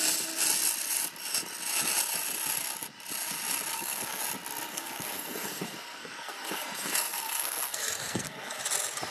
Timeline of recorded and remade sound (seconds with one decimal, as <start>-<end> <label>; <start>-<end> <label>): 0.0-3.7 recorded; 3.7-4.2 remade; 4.2-4.7 recorded; 4.7-8.6 remade; 8.6-9.1 recorded